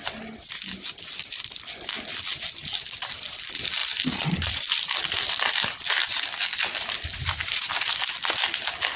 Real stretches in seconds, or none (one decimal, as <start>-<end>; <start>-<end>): 0.0-7.1; 7.7-9.0